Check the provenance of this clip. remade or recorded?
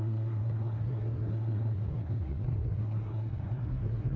remade